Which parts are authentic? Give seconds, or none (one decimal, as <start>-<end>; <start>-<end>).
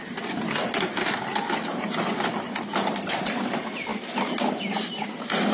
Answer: 3.9-4.6